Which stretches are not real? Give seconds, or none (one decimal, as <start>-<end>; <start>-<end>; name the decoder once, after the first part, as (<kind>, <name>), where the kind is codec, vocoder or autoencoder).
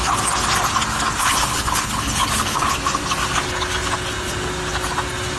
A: 1.2-2.7 (codec, HILCodec)